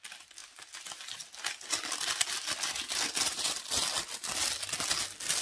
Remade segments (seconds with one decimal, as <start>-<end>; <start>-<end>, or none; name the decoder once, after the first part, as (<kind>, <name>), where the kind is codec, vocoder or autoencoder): none